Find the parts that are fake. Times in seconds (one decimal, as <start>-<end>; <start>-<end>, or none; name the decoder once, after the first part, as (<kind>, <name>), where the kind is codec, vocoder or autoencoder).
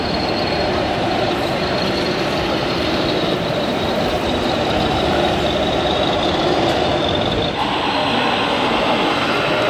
0.0-6.9 (vocoder, BigVGAN v2)